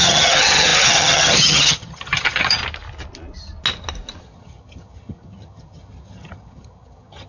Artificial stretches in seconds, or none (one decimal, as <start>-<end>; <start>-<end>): 0.0-2.6; 4.2-7.3